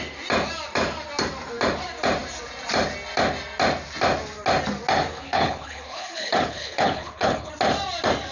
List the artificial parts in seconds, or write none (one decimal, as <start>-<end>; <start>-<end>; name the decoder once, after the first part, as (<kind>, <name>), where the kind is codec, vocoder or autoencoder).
5.1-7.5 (codec, HILCodec)